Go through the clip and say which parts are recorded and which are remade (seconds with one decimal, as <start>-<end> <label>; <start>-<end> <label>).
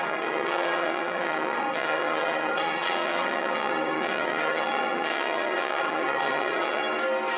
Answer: 0.0-6.8 remade; 6.8-7.4 recorded